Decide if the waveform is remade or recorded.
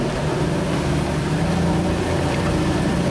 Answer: remade